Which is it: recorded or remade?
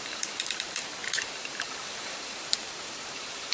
remade